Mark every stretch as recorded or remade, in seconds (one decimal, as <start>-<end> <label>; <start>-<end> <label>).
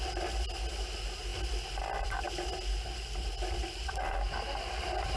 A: 0.0-5.2 recorded